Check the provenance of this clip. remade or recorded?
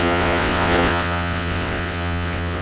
remade